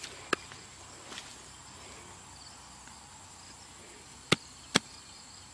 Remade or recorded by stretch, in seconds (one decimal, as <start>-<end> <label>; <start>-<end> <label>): 0.0-5.5 recorded